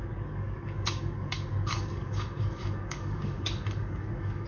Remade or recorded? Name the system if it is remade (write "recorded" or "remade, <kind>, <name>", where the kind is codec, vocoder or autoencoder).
remade, codec, DAC